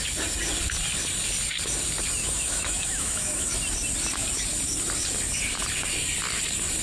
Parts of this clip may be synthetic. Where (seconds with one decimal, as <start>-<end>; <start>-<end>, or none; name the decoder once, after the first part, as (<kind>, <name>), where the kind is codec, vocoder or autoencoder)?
2.2-3.5 (autoencoder, DAC-VAE)